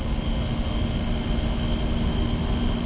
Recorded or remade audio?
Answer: recorded